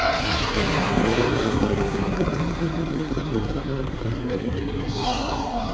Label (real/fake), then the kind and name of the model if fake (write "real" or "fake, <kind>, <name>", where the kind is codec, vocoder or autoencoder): fake, codec, SNAC